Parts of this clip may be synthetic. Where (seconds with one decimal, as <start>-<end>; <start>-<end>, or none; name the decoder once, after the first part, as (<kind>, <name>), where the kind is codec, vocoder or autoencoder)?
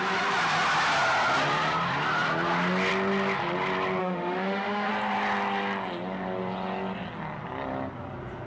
4.0-4.9 (autoencoder, DAC-VAE)